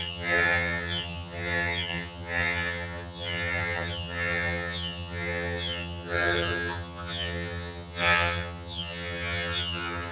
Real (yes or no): no